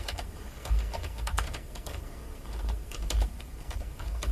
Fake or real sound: fake